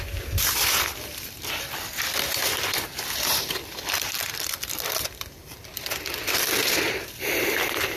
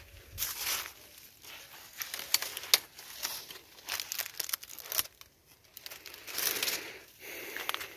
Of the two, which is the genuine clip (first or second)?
second